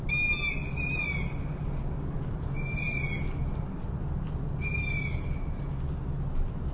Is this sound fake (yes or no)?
no